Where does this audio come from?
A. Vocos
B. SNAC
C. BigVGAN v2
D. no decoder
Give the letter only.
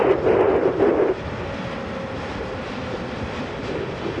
D